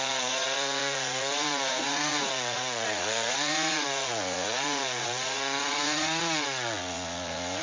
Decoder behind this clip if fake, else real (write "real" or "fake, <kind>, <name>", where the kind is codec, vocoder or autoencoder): fake, vocoder, Vocos